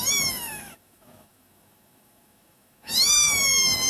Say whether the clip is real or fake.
fake